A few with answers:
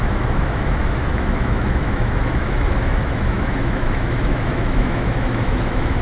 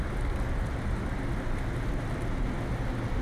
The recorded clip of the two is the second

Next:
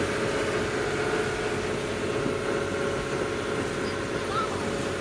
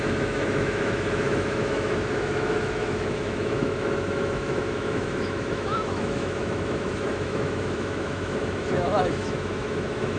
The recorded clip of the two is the first